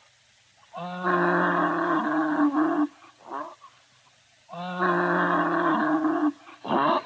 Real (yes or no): yes